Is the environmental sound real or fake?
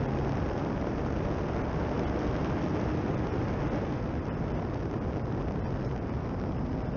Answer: real